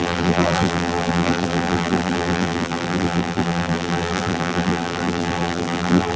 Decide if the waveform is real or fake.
fake